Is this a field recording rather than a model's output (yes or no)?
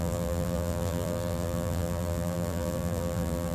no